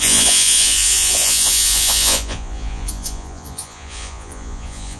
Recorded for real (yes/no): no